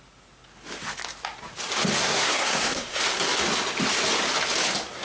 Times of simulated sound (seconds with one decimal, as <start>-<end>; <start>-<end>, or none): 2.0-3.0